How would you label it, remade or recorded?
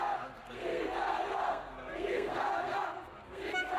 remade